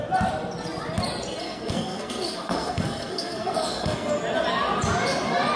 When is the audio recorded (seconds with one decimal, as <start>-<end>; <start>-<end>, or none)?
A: 0.0-1.4; 4.2-5.6